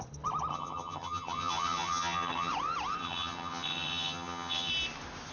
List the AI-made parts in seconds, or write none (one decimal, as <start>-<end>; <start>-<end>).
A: 0.5-2.5; 3.0-4.7